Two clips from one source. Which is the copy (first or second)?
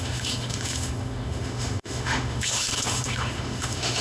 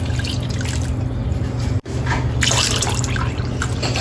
first